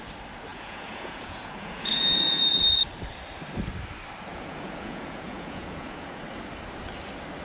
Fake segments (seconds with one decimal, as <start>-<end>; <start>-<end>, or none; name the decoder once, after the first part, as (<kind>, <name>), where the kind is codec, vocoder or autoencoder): 0.5-2.8 (vocoder, Vocos); 4.3-6.2